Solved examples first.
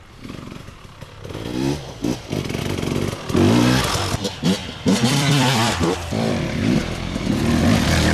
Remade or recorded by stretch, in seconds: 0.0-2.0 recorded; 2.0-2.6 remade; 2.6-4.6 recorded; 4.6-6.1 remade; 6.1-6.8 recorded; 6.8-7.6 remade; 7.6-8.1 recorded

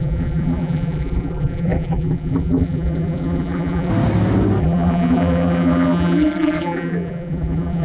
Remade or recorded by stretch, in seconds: 0.0-3.9 remade; 3.9-4.6 recorded; 4.6-7.8 remade

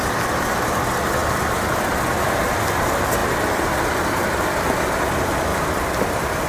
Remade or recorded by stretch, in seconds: 0.0-1.2 recorded; 1.2-2.4 remade; 2.4-3.2 recorded; 3.2-4.8 remade; 4.8-5.5 recorded; 5.5-6.5 remade